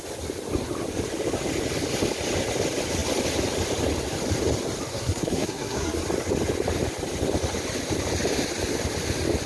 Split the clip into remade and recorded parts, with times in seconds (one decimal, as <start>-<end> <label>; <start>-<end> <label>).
0.0-4.9 recorded; 4.9-6.0 remade; 6.0-9.5 recorded